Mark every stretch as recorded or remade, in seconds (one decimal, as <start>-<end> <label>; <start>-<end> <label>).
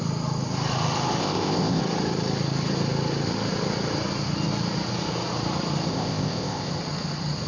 0.0-1.2 recorded; 1.2-1.8 remade; 1.8-5.9 recorded; 5.9-6.7 remade; 6.7-7.5 recorded